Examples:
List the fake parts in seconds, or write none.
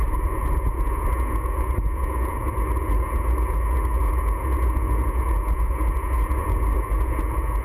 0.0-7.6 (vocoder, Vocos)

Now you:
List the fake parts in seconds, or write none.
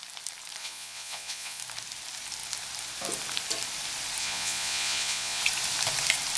0.6-1.6 (vocoder, Vocos); 4.2-5.4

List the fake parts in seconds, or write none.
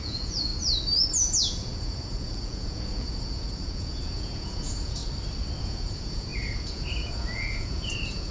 0.0-0.5 (vocoder, Vocos); 1.2-5.0; 5.6-8.3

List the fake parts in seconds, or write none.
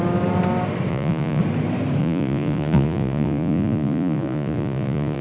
0.9-1.4 (vocoder, Vocos); 2.0-5.2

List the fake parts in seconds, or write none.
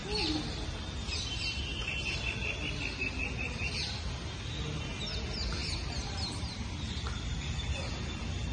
none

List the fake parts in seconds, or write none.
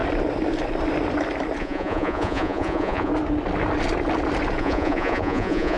1.6-3.1 (vocoder, Vocos); 4.6-5.8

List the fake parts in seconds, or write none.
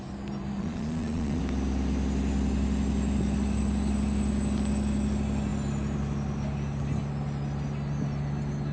0.6-1.4 (vocoder, Vocos)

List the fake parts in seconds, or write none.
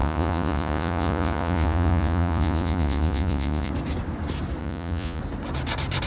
0.0-3.7 (vocoder, Vocos); 4.6-5.2